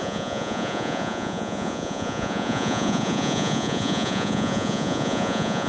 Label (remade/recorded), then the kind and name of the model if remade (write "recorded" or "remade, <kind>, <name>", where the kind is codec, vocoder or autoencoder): remade, vocoder, Vocos